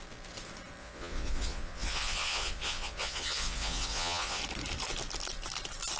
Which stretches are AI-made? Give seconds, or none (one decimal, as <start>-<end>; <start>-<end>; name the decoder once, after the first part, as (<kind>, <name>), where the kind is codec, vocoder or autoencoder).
0.8-4.4 (vocoder, Vocos)

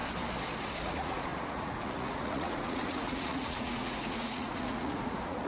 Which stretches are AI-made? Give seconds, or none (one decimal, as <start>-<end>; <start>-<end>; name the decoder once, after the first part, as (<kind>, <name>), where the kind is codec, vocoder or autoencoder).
0.8-5.5 (vocoder, Vocos)

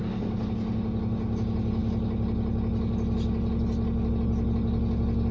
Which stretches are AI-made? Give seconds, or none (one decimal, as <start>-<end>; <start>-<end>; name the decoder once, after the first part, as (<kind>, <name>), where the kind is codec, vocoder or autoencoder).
none

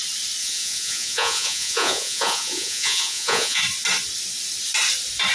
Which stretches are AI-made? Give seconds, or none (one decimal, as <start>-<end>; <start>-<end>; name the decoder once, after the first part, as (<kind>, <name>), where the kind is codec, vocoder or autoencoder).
0.4-3.6 (vocoder, Vocos)

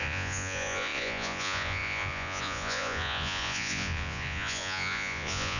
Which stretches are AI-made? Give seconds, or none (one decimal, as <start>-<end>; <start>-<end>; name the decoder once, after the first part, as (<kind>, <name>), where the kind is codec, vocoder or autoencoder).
0.0-5.6 (vocoder, Vocos)

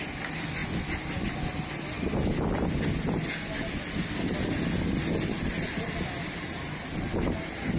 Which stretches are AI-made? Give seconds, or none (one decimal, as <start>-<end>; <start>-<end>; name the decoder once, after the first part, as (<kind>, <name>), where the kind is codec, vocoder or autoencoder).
none

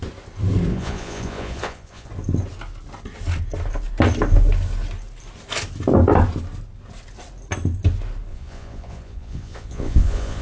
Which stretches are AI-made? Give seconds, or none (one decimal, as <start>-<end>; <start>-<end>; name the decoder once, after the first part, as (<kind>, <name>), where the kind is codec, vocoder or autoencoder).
0.7-2.1 (vocoder, Vocos); 8.3-10.4